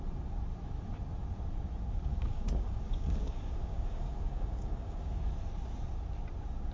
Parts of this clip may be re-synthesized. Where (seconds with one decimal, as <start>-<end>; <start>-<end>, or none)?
2.1-5.2